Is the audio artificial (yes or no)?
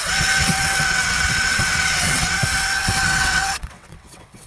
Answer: yes